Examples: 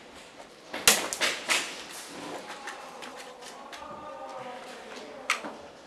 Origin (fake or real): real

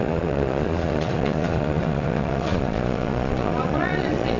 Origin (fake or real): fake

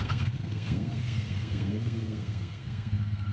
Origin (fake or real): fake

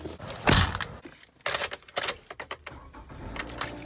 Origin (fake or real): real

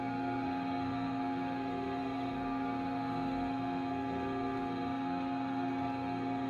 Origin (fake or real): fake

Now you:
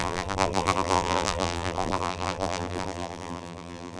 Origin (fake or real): fake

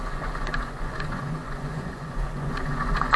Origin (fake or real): fake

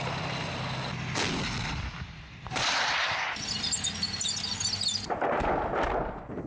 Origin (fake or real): real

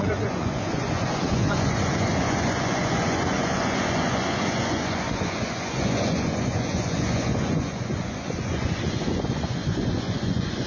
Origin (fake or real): fake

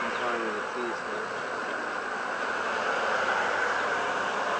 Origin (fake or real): real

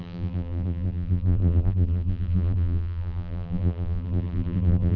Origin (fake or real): fake